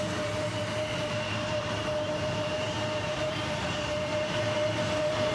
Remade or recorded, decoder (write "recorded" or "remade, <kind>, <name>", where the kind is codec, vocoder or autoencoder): remade, vocoder, BigVGAN v2